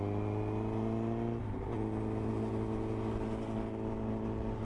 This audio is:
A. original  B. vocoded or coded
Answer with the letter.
A